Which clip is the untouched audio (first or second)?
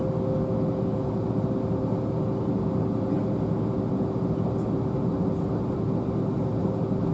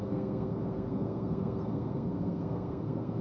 first